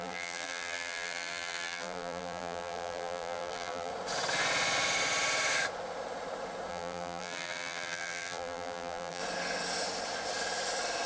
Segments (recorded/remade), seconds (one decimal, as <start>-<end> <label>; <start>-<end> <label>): 0.0-3.9 remade; 3.9-6.7 recorded; 6.7-9.2 remade; 9.2-11.1 recorded